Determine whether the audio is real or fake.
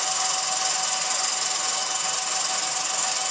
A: real